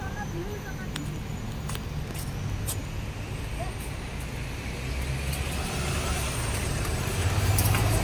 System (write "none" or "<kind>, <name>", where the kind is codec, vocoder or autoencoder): none